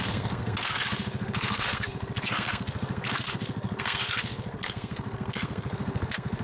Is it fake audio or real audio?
fake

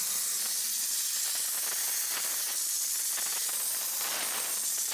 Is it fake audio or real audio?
real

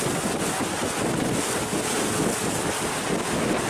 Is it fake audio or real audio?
real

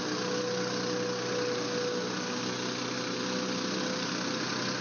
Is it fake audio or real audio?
real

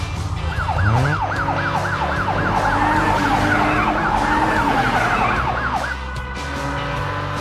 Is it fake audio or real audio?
real